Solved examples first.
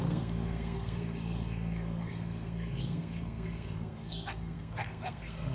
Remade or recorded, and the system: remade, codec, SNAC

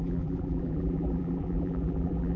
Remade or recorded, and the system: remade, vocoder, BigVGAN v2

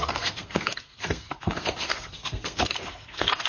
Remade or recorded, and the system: remade, codec, SNAC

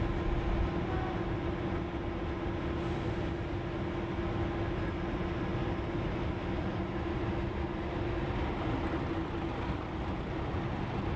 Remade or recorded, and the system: recorded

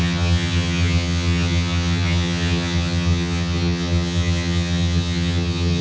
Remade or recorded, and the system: remade, vocoder, HiFi-GAN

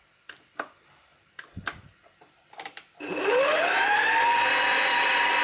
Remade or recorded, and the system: remade, vocoder, BigVGAN v2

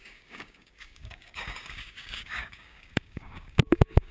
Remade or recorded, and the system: remade, codec, DAC